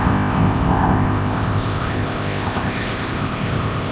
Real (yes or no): no